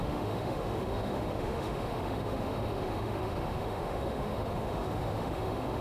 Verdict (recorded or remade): remade